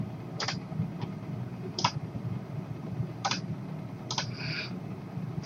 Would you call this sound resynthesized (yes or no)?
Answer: no